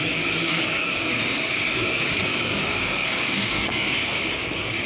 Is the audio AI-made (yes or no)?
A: yes